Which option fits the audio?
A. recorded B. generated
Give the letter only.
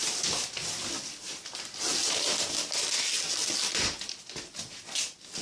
A